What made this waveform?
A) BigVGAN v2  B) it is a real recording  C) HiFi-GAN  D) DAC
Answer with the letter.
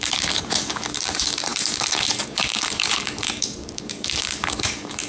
D